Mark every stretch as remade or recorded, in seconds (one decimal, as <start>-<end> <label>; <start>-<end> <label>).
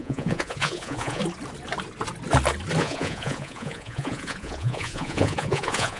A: 0.0-1.2 remade; 1.2-2.8 recorded; 2.8-6.0 remade